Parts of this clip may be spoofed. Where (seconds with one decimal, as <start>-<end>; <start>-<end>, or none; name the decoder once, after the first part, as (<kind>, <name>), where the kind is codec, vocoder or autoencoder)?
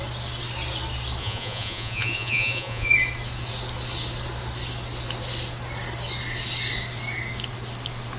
1.2-2.9 (vocoder, Vocos)